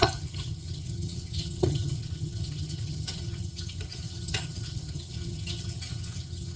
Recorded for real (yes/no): no